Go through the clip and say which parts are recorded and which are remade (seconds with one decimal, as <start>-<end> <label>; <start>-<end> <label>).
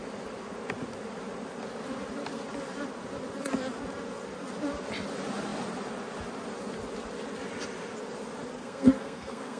0.0-8.6 recorded; 8.6-9.6 remade